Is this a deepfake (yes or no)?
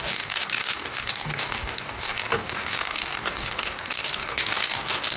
yes